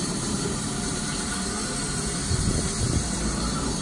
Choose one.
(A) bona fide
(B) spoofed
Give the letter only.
B